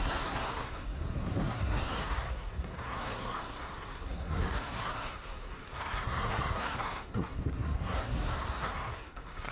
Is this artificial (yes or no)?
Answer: yes